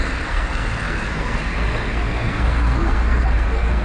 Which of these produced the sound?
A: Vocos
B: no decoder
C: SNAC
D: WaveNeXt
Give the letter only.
C